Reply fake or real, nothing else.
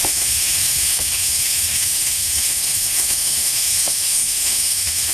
fake